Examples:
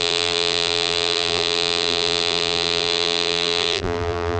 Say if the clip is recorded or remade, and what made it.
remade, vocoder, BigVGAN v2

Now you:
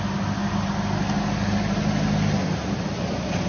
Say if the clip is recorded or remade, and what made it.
recorded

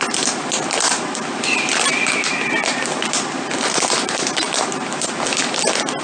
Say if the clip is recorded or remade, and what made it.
recorded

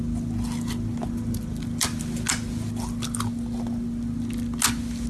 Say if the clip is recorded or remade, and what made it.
recorded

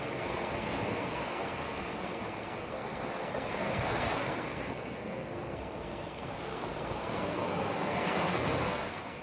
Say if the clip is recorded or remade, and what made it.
remade, codec, SNAC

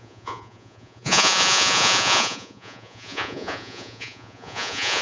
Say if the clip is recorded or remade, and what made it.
remade, vocoder, Vocos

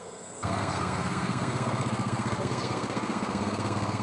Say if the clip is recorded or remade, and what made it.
remade, codec, SNAC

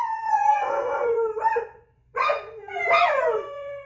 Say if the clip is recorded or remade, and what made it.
remade, vocoder, Vocos